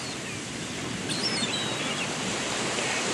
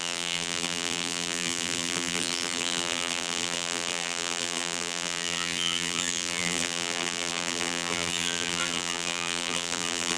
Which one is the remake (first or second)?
second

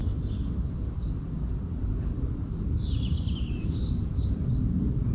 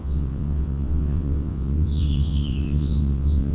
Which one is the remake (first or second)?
second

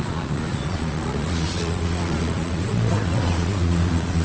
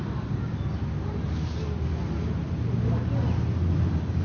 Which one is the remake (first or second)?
first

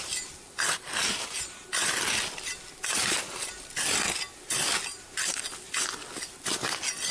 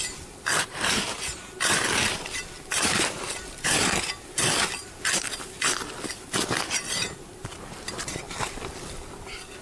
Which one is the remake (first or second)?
second